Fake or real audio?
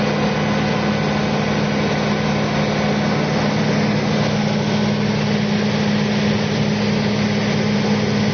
real